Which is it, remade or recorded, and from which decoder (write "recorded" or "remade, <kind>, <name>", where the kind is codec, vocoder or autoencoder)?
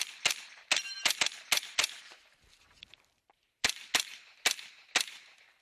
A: remade, vocoder, BigVGAN v2